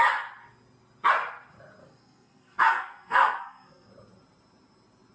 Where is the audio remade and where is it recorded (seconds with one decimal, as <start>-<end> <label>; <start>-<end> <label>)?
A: 0.0-1.8 recorded; 1.8-3.9 remade; 3.9-5.1 recorded

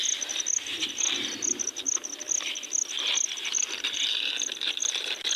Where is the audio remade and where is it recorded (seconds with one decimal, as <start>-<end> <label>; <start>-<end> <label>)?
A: 0.0-5.4 recorded

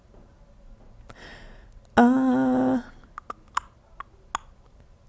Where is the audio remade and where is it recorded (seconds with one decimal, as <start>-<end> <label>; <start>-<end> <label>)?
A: 0.0-5.1 recorded

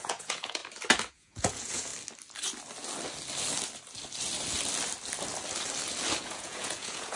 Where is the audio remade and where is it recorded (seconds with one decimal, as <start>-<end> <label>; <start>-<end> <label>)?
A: 0.0-0.6 remade; 0.6-1.1 recorded; 1.1-1.9 remade; 1.9-6.2 recorded; 6.2-7.2 remade

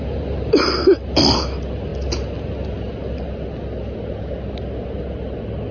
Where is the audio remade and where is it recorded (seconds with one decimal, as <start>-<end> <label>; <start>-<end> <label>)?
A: 0.0-5.7 recorded

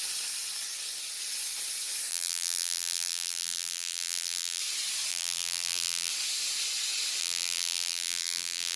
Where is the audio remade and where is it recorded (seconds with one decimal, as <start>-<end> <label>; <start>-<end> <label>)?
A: 0.0-2.1 recorded; 2.1-4.6 remade; 4.6-5.1 recorded; 5.1-6.1 remade; 6.1-7.2 recorded; 7.2-8.8 remade

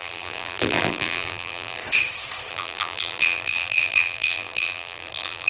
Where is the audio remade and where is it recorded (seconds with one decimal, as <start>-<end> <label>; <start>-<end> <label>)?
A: 0.0-1.8 remade; 1.8-2.5 recorded; 2.5-5.5 remade